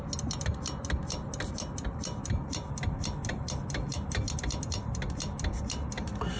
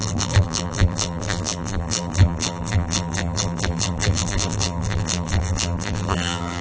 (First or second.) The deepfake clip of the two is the second